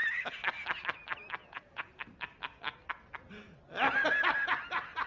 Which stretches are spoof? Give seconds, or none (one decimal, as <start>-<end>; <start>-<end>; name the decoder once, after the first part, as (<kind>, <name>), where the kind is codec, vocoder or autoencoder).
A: 1.4-2.0 (vocoder, Vocos)